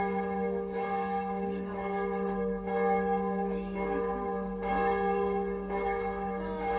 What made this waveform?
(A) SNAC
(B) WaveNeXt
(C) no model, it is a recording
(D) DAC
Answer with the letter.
D